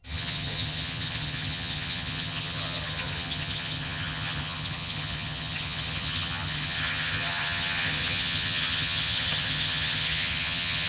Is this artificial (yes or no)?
yes